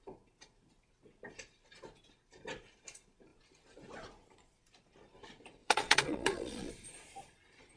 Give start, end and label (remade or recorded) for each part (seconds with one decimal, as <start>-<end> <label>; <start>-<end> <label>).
0.0-5.6 recorded; 5.6-6.7 remade; 6.7-7.8 recorded